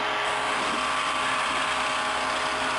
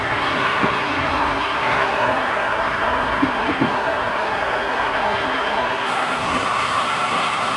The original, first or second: first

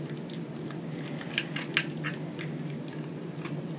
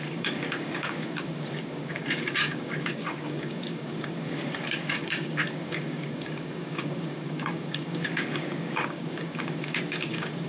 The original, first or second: first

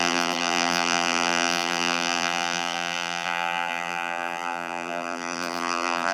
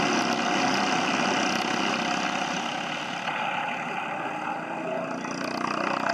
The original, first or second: second